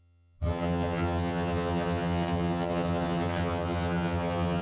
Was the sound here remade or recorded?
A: remade